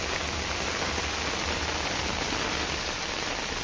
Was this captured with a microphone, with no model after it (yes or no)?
yes